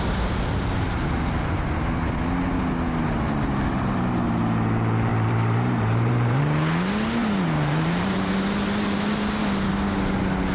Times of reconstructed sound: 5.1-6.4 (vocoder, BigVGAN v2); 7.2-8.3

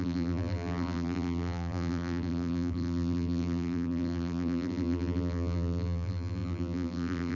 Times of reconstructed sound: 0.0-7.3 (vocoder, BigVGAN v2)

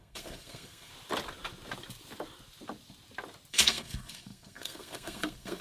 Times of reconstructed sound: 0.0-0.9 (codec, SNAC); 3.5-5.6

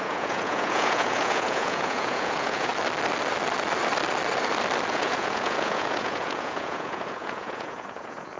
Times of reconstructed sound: 0.0-2.7 (vocoder, Vocos); 4.9-8.4